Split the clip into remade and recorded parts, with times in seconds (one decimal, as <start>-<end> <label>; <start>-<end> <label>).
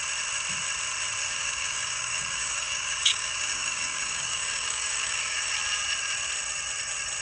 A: 0.0-1.2 recorded; 1.2-5.5 remade; 5.5-7.2 recorded